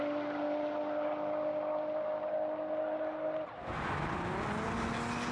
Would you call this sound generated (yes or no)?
no